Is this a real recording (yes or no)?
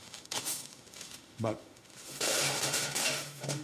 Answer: no